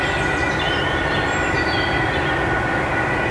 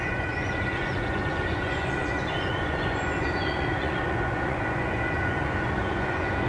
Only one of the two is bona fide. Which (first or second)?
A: first